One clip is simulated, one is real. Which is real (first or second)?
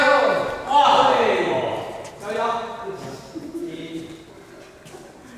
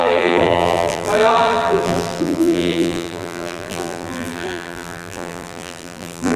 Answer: first